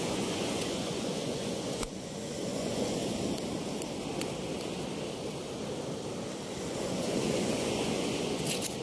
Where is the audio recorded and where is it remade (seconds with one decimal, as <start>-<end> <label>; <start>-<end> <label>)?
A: 0.0-3.0 remade; 3.0-6.6 recorded; 6.6-8.8 remade